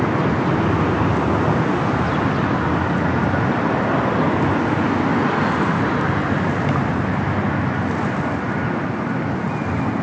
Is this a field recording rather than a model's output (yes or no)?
yes